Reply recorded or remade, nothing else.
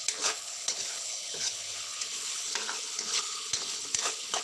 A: remade